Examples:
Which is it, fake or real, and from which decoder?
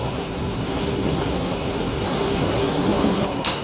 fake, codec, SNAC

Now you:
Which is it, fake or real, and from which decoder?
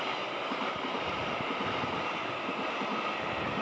real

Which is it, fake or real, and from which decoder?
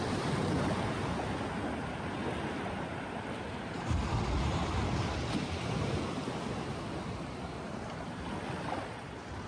real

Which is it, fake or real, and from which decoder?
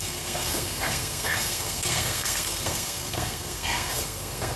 fake, codec, SNAC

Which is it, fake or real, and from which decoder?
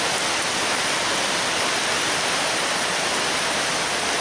real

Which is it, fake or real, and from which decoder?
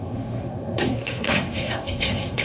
fake, codec, SNAC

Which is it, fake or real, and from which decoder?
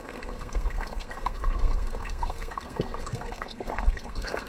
fake, codec, SNAC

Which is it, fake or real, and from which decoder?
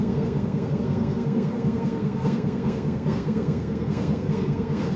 fake, codec, SNAC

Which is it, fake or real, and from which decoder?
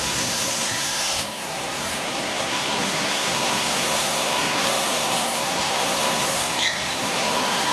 fake, codec, SNAC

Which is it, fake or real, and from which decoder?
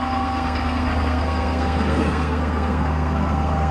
fake, codec, SNAC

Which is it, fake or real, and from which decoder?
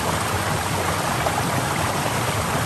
real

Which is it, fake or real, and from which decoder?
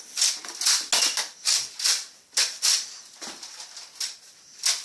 real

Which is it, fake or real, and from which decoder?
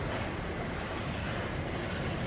real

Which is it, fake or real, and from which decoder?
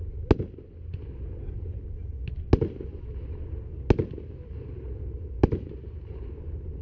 real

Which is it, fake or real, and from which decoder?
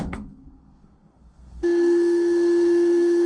fake, codec, SNAC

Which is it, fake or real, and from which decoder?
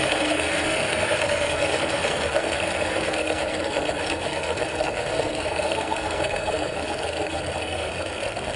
fake, codec, SNAC